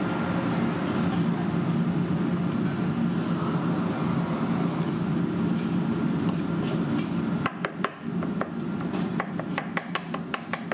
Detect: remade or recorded recorded